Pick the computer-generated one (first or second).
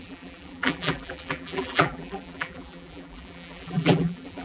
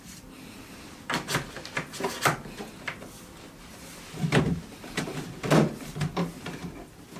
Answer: first